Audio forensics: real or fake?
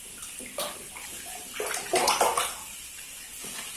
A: real